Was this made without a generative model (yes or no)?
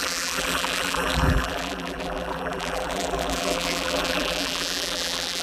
no